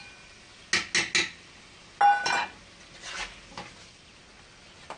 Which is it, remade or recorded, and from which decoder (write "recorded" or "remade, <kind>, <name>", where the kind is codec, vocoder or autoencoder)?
recorded